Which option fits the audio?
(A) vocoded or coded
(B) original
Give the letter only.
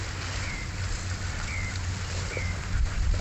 B